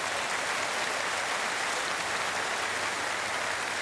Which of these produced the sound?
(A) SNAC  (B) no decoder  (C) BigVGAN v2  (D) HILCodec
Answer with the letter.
B